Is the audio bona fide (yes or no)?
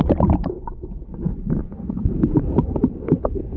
no